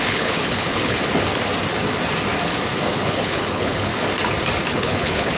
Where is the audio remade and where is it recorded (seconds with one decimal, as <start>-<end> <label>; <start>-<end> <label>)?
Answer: 0.0-1.0 remade; 1.0-2.9 recorded; 2.9-3.9 remade; 3.9-4.7 recorded; 4.7-5.4 remade